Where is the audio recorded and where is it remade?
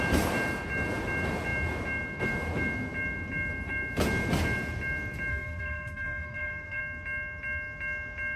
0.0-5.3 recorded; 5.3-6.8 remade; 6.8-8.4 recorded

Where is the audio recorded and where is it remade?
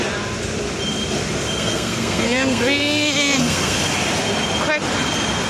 0.0-1.5 recorded; 1.5-3.8 remade; 3.8-5.5 recorded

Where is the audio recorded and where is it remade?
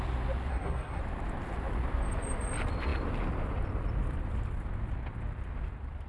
0.0-0.5 recorded; 0.5-1.0 remade; 1.0-6.1 recorded